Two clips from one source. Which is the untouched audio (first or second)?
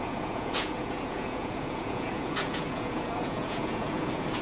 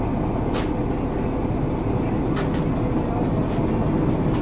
second